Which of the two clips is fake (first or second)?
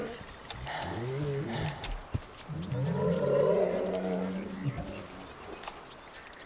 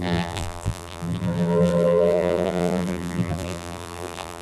second